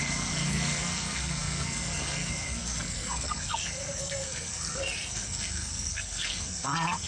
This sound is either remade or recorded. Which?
remade